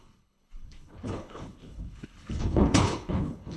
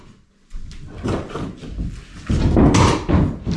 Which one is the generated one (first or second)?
first